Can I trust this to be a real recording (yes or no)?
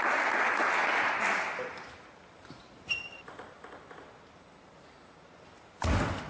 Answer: yes